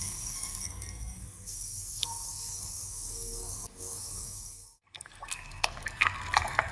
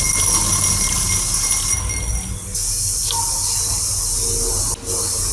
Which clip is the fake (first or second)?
first